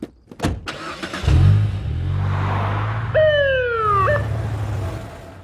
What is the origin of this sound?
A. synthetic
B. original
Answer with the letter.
B